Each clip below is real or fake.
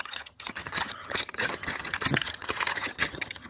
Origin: fake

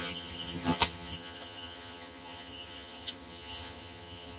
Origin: fake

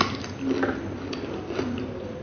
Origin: real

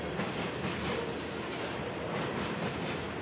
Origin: real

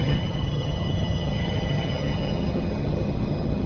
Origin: fake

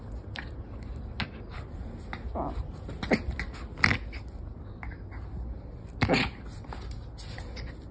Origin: real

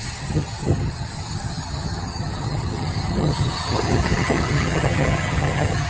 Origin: fake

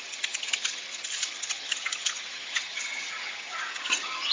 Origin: fake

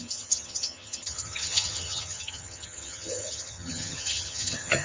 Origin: fake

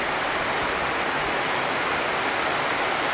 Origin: real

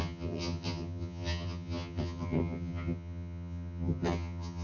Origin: fake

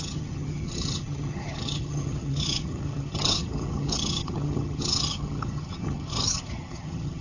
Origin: fake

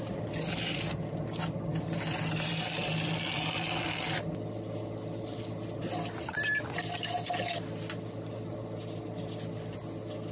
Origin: real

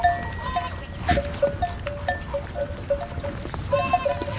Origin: real